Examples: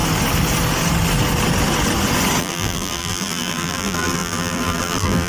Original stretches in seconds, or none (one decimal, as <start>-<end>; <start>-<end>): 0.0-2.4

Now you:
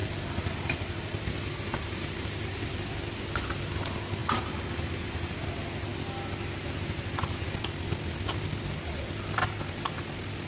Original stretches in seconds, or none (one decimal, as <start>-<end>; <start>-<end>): 2.6-4.2; 5.5-10.5

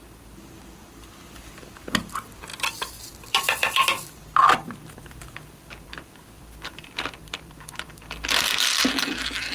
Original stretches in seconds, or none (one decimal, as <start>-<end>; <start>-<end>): none

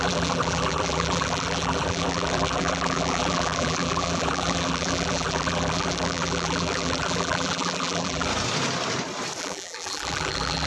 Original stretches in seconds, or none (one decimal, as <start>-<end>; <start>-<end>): 8.3-9.4

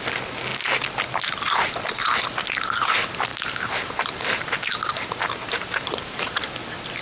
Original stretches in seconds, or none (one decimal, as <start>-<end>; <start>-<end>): 0.0-3.3; 6.6-7.0